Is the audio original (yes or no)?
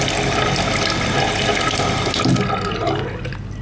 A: yes